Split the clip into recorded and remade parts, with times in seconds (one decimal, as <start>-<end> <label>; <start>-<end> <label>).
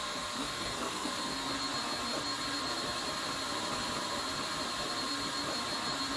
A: 0.0-0.4 recorded; 0.4-1.5 remade; 1.5-6.2 recorded